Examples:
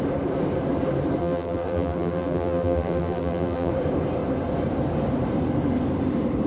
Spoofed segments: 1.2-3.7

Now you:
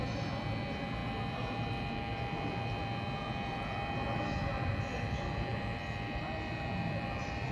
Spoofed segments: 0.0-7.5

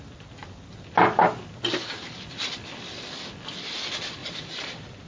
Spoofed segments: 4.2-5.1

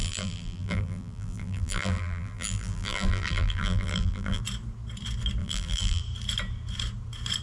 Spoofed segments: 0.0-4.4; 5.4-6.0

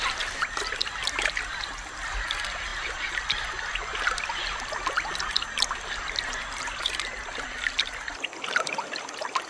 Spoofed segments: none